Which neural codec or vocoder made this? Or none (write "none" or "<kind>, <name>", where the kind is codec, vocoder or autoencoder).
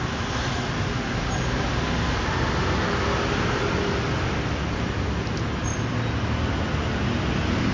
none